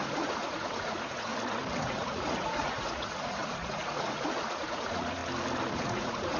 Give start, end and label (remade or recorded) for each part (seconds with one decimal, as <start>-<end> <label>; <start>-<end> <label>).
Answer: 0.0-1.3 remade; 1.3-1.8 recorded; 1.8-5.2 remade; 5.2-5.7 recorded; 5.7-6.4 remade